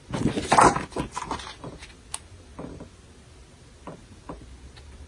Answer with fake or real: real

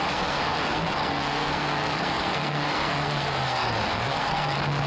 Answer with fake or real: fake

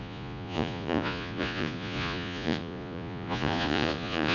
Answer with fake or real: fake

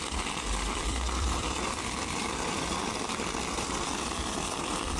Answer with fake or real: fake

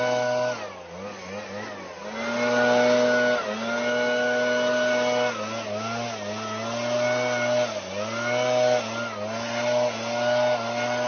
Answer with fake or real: real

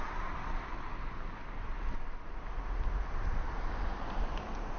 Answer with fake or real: real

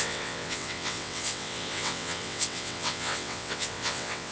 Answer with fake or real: fake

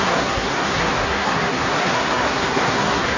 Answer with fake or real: fake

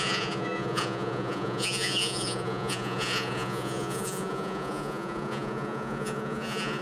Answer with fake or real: fake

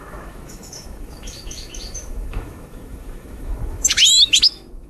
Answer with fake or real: fake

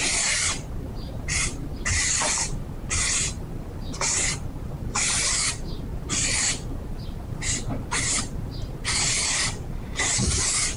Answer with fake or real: fake